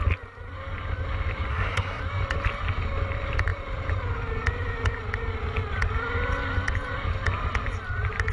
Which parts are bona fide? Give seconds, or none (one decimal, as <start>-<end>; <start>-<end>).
0.0-1.5; 2.0-8.3